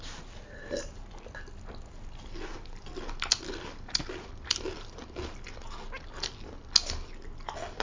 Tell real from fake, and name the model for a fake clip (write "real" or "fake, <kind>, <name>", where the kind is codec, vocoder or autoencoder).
real